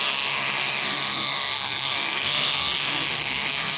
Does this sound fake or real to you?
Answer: fake